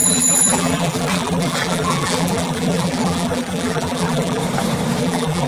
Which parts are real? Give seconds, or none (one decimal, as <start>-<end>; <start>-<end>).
4.4-5.0